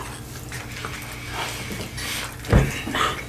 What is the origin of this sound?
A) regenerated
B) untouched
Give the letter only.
B